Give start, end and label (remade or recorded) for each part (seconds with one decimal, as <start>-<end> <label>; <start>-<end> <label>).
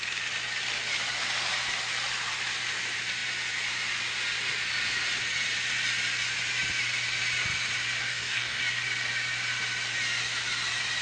0.0-8.0 recorded; 8.0-8.6 remade; 8.6-11.0 recorded